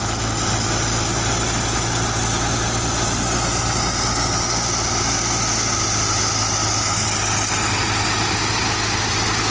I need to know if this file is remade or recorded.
recorded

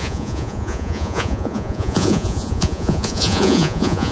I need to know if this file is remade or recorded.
remade